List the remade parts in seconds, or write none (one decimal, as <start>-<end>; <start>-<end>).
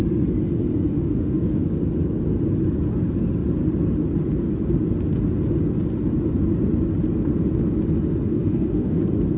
0.9-1.6; 8.3-9.0